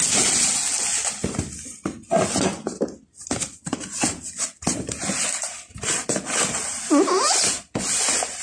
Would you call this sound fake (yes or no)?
no